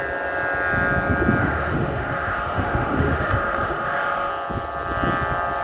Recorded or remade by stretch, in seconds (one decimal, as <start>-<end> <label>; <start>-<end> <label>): 0.0-1.4 recorded; 1.4-4.3 remade; 4.3-5.6 recorded